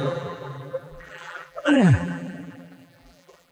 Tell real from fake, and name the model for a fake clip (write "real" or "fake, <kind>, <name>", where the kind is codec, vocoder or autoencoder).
fake, vocoder, BigVGAN v2